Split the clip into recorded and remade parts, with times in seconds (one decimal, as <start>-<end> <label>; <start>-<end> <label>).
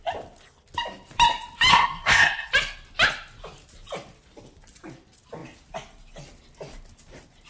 0.0-1.7 recorded; 1.7-2.5 remade; 2.5-7.5 recorded